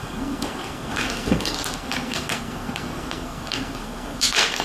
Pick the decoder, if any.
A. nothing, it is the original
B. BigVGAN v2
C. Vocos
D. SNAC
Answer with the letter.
D